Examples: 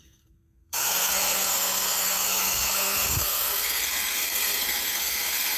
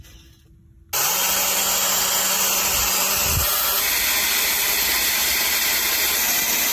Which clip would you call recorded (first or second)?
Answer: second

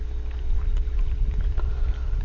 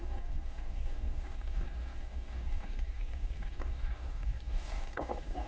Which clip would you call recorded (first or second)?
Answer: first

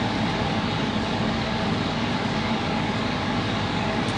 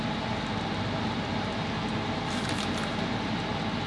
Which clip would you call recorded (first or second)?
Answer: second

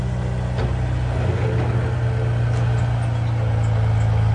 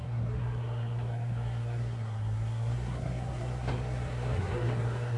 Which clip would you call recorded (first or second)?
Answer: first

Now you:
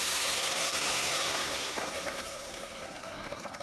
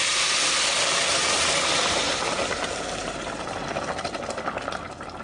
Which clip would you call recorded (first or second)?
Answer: second